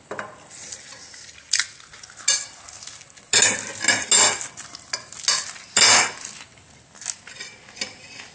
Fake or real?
real